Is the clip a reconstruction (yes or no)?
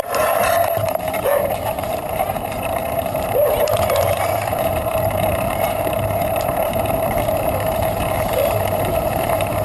yes